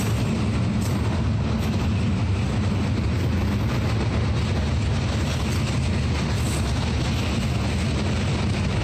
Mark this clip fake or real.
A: real